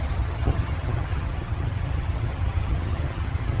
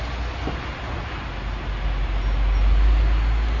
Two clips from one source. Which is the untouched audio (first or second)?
second